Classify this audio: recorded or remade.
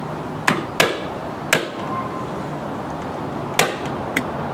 recorded